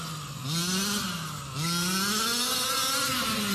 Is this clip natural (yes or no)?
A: yes